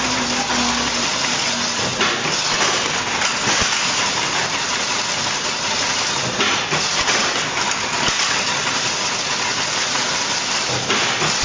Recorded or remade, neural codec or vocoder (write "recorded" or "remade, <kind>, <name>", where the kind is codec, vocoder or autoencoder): recorded